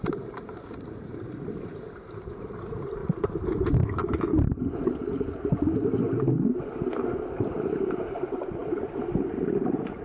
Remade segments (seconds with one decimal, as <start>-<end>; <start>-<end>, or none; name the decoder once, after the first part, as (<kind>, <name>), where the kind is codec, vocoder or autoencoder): 0.0-3.0 (vocoder, BigVGAN v2); 7.9-8.6; 9.4-10.0